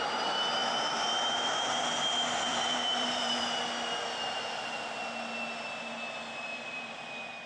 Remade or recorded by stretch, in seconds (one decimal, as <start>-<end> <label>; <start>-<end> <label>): 0.0-0.6 recorded; 0.6-1.8 remade; 1.8-2.5 recorded; 2.5-3.4 remade; 3.4-7.5 recorded